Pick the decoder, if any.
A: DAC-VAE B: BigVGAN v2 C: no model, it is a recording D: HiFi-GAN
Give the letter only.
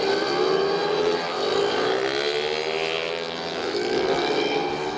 C